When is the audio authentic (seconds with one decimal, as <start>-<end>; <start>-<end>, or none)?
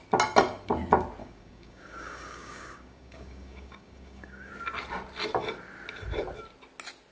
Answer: 0.0-1.2; 4.5-7.1